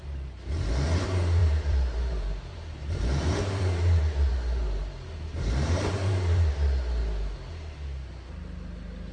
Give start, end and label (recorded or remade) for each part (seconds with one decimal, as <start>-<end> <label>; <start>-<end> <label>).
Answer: 0.0-1.4 recorded; 1.4-6.5 remade; 6.5-9.1 recorded